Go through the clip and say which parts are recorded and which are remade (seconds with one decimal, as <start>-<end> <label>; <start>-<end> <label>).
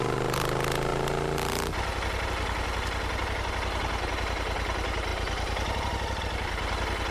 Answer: 0.0-7.1 recorded